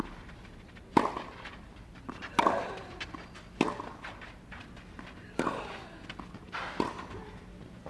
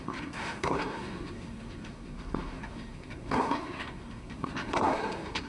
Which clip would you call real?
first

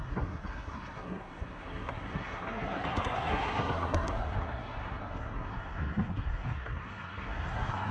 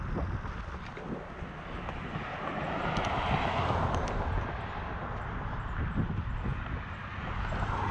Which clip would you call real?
second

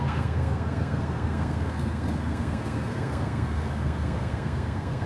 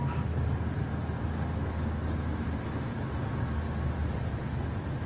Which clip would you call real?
second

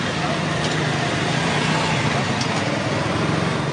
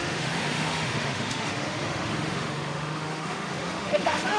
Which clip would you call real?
first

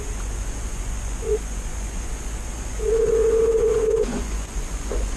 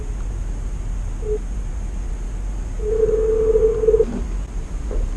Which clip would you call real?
second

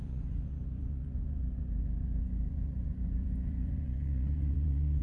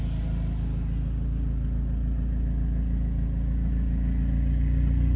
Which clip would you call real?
second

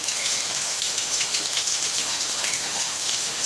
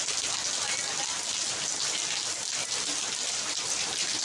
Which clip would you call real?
second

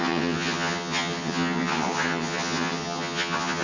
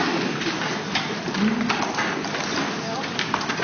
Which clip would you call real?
second